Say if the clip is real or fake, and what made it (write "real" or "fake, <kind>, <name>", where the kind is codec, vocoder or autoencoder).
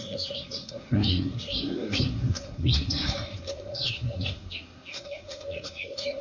fake, codec, SNAC